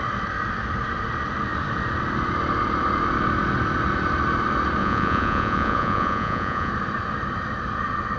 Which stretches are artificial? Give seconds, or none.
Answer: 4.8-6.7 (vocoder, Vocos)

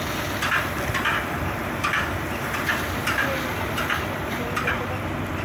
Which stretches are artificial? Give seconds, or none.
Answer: 1.6-4.8 (vocoder, BigVGAN v2)

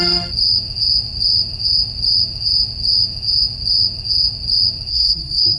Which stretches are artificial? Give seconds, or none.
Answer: 4.9-5.6 (codec, SNAC)

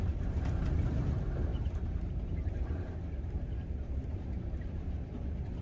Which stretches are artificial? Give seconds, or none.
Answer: 1.5-4.9 (vocoder, BigVGAN v2)

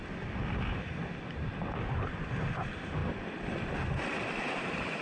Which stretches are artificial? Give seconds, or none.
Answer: 3.0-4.6 (vocoder, BigVGAN v2)

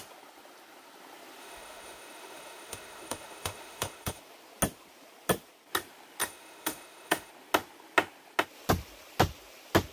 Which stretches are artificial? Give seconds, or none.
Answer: 1.4-4.2 (autoencoder, DAC-VAE); 6.2-7.3

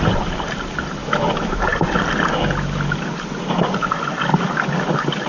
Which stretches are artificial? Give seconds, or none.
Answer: 1.0-1.6 (autoencoder, DAC-VAE)